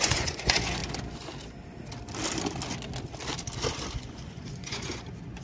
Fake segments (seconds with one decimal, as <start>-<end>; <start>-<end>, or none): 0.0-0.8; 4.0-5.4

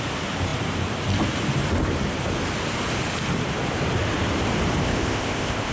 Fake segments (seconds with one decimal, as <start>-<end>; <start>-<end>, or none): 4.8-5.7